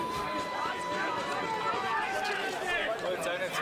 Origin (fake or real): real